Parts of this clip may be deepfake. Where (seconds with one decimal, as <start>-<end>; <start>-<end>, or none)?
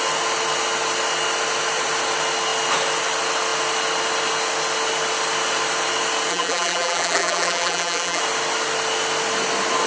6.3-8.2